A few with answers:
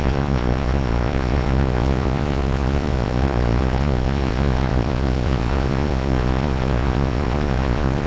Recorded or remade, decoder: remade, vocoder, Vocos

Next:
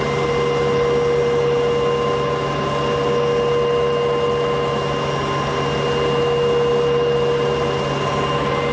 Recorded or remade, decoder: recorded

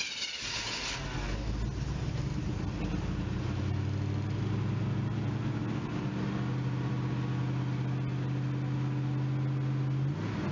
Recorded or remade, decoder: recorded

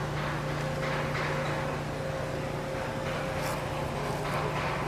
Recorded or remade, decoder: recorded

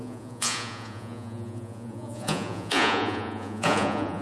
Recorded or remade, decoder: remade, vocoder, Vocos